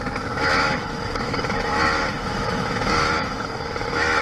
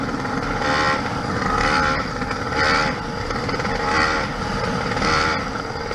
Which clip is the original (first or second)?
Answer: second